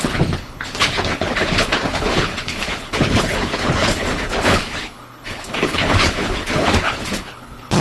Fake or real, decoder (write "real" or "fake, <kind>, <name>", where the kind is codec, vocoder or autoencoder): fake, codec, HILCodec